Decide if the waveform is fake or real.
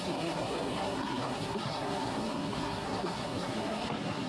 fake